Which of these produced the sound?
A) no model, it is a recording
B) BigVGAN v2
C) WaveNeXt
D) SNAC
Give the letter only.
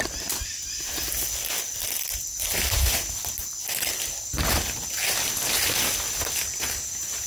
A